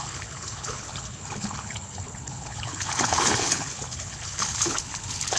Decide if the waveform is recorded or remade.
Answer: remade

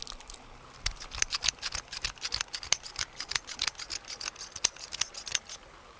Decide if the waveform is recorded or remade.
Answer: recorded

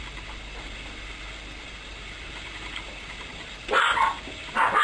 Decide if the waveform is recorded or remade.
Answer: recorded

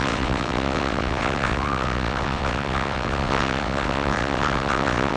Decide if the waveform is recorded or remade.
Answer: remade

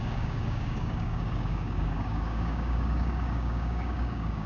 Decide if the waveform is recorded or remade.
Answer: remade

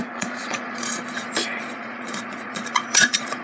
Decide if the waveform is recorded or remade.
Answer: remade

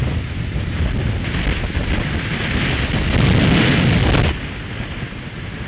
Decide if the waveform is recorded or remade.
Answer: recorded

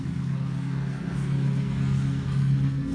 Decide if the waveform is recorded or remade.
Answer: remade